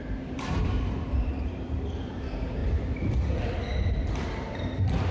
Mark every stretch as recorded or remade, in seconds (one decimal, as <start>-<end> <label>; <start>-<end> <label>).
0.0-2.6 remade; 2.6-4.1 recorded; 4.1-5.1 remade